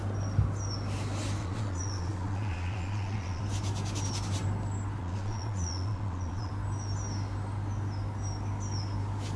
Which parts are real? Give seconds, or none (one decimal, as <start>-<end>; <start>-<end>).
0.0-1.4; 3.4-5.0; 6.5-9.4